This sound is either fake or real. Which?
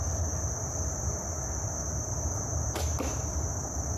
real